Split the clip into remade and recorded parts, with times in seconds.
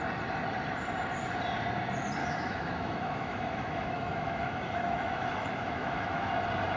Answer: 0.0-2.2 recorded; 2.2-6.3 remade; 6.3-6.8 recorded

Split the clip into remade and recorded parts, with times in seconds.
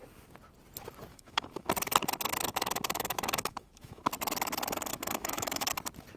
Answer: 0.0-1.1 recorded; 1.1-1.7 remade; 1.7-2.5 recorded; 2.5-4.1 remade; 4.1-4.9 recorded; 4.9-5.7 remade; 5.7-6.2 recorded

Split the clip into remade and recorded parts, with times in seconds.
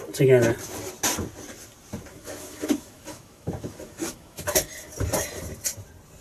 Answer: 0.0-2.1 recorded; 2.1-4.7 remade; 4.7-6.2 recorded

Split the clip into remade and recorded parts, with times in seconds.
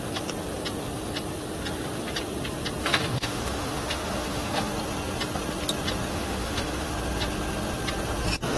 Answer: 0.0-2.8 recorded; 2.8-4.7 remade; 4.7-6.1 recorded; 6.1-6.9 remade; 6.9-8.6 recorded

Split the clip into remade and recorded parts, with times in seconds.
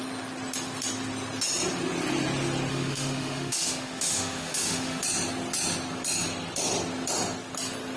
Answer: 0.0-2.7 recorded; 2.7-5.0 remade; 5.0-8.0 recorded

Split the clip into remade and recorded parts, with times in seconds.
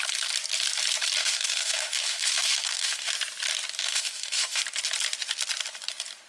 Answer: 0.0-1.2 recorded; 1.2-3.1 remade; 3.1-3.8 recorded; 3.8-4.6 remade; 4.6-6.3 recorded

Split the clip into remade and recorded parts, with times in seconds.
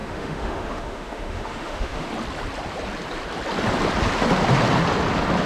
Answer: 0.0-2.1 remade; 2.1-5.5 recorded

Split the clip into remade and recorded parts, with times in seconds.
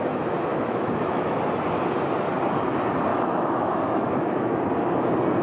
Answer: 0.0-0.5 recorded; 0.5-1.4 remade; 1.4-3.1 recorded; 3.1-4.6 remade; 4.6-5.4 recorded